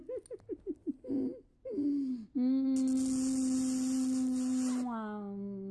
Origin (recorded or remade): recorded